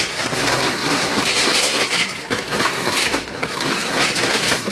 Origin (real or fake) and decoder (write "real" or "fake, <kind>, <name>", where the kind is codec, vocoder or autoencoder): fake, codec, SNAC